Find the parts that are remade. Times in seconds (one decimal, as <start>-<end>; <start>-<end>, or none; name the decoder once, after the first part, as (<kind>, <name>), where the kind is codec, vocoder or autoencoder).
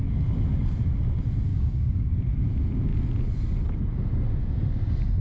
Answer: 1.5-2.1 (codec, DAC)